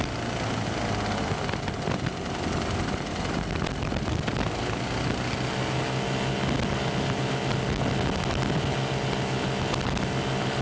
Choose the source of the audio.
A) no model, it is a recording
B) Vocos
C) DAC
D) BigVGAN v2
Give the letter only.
A